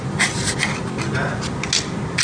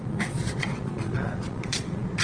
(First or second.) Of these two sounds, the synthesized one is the second